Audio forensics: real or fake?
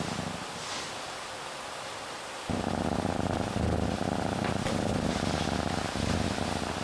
real